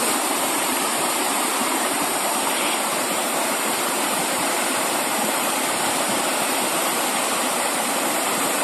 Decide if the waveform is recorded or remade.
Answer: remade